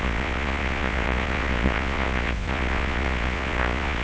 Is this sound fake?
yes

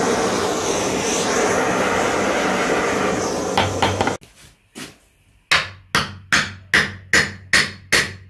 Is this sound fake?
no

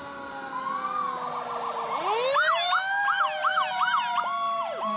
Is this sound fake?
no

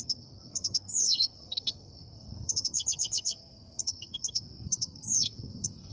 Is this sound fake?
yes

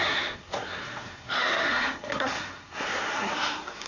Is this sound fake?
yes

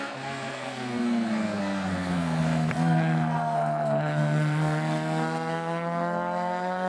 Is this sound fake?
yes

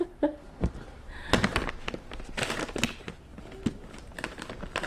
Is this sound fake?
no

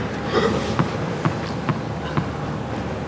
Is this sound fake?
no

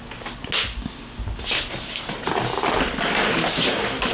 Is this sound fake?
no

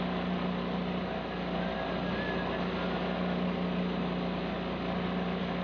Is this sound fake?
no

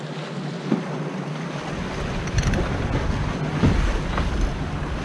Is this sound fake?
no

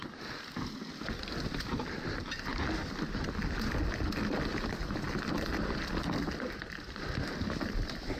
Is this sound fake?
no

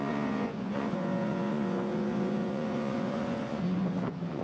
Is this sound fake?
yes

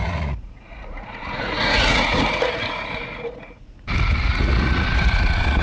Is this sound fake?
yes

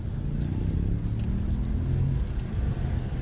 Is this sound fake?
no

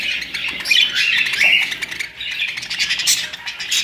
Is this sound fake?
no